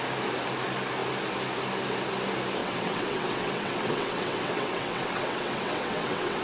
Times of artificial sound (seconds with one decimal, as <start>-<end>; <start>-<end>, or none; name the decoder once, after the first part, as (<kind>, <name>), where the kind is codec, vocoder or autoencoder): 2.6-6.4 (vocoder, WaveNeXt)